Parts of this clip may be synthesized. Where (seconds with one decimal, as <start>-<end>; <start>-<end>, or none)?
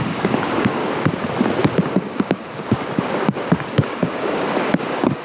0.0-0.8; 1.7-5.2